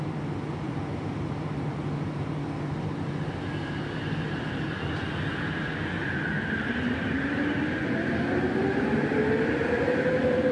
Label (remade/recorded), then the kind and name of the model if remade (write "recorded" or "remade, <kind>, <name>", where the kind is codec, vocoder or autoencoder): recorded